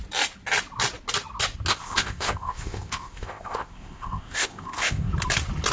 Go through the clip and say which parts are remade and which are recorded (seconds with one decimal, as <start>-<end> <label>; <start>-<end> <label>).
0.0-1.7 recorded; 1.7-5.1 remade; 5.1-5.7 recorded